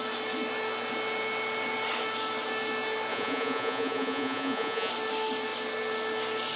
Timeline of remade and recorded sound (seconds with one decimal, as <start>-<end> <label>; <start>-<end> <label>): 0.0-3.1 recorded; 3.1-4.9 remade; 4.9-6.6 recorded